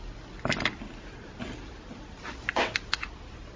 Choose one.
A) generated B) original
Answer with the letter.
B